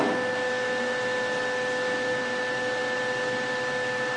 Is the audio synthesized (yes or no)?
no